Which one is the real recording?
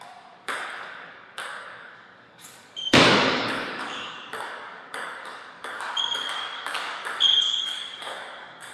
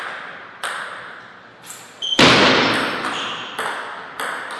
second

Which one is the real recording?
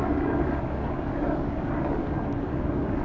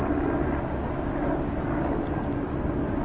second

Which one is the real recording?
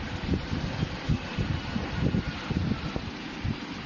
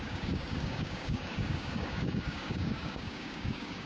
first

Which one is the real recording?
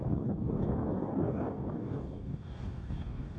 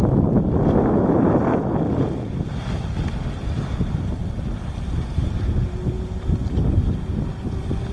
second